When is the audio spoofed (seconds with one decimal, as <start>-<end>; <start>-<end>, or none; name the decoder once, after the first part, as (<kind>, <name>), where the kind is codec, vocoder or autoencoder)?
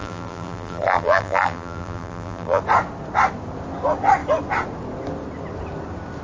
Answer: 0.0-2.6 (vocoder, BigVGAN v2)